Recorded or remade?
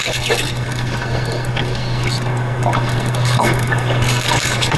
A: remade